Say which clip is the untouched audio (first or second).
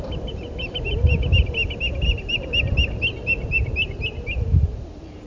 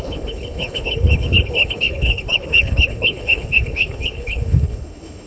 first